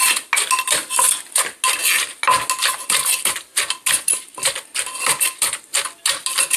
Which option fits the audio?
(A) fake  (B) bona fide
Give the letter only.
B